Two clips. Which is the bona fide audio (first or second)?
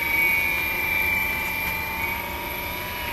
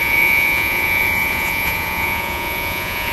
first